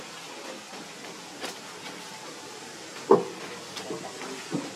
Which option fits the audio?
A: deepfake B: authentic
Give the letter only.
B